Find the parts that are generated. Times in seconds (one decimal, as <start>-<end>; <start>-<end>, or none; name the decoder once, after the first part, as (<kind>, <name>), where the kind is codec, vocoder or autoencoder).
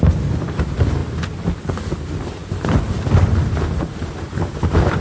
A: 0.0-1.0 (vocoder, BigVGAN v2); 2.0-5.0